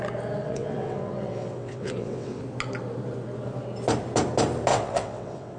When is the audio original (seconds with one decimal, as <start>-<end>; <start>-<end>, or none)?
0.0-0.4; 2.4-4.7